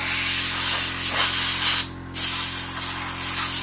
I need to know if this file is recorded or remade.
recorded